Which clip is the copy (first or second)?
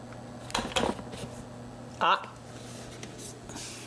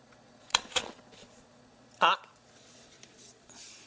second